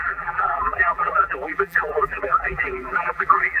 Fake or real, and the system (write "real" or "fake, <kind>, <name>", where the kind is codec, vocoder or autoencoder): fake, vocoder, BigVGAN v2